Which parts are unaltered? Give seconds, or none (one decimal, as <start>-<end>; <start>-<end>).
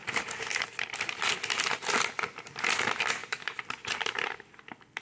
0.0-3.2; 4.1-5.0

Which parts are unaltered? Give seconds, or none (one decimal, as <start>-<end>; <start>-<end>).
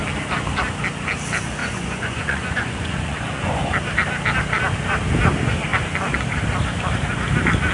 0.0-1.6; 3.7-7.7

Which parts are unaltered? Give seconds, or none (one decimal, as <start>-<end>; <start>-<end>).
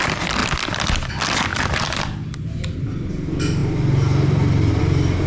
0.0-5.3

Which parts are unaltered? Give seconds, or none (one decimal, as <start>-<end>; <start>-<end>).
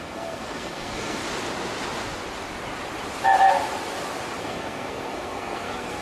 1.2-4.4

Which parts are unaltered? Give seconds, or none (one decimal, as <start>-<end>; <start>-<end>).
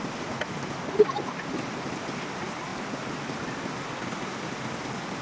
0.0-5.2